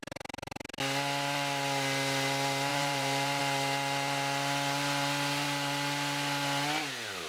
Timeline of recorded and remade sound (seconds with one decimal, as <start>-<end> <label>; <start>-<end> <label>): 0.0-2.7 recorded; 2.7-3.4 remade; 3.4-7.3 recorded